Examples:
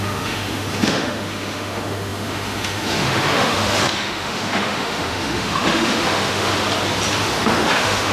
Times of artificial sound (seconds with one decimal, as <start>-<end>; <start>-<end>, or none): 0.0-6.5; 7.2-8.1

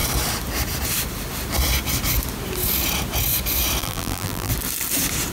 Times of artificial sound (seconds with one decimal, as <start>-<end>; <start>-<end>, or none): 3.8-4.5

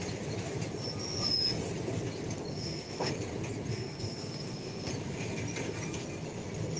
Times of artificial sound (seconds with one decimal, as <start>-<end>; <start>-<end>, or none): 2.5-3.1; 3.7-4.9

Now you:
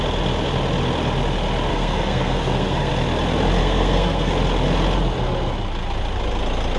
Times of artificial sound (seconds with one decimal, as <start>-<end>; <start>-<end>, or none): 1.7-2.9; 3.6-4.3

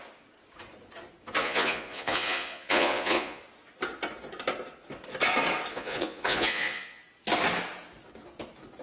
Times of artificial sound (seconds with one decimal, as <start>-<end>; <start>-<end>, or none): 1.4-3.4; 5.7-7.0

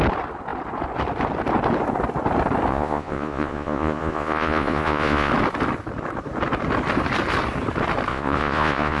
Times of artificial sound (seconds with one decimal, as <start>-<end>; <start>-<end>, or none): 2.7-5.3; 8.1-9.0